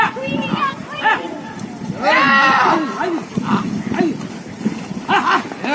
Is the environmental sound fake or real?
real